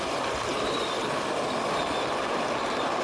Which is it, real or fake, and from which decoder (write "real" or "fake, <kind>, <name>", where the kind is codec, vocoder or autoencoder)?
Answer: real